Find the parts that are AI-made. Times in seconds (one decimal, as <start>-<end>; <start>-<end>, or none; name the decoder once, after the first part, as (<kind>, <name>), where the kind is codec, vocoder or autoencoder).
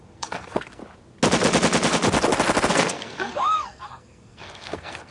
0.0-0.8 (codec, SNAC); 2.7-5.1